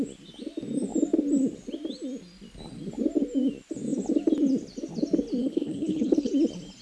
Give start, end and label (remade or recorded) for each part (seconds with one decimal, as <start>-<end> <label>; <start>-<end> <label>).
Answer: 0.0-5.4 recorded; 5.4-6.3 remade; 6.3-6.8 recorded